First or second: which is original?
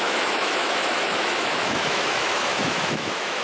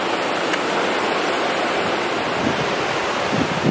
second